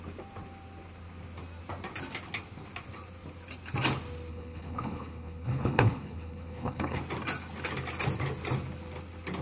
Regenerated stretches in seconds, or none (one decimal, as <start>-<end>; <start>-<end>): 4.3-7.0

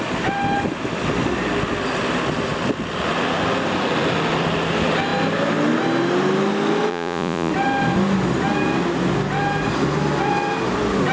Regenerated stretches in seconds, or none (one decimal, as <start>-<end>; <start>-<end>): 6.9-7.5

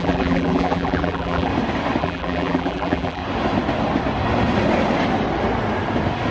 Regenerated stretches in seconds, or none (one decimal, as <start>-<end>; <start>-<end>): 0.0-1.5; 2.0-3.2

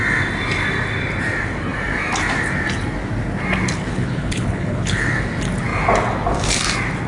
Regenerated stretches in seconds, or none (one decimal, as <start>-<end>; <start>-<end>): 3.9-5.1